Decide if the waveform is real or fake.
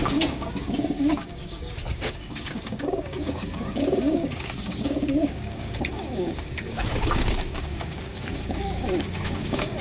fake